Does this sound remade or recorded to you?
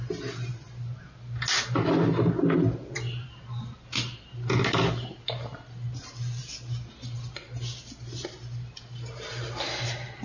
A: recorded